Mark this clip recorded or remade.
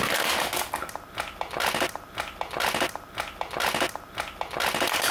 recorded